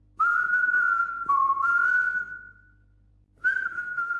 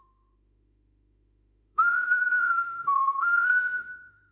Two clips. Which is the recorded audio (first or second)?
first